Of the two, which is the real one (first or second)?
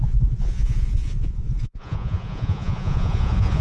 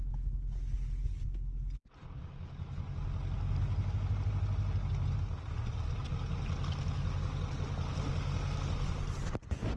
second